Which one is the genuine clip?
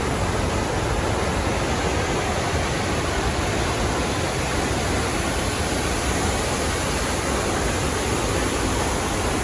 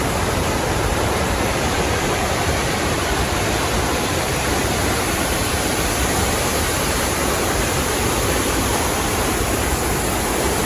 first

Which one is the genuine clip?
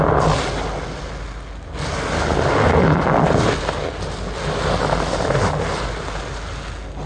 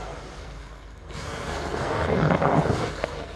first